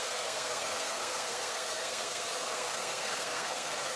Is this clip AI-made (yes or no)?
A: yes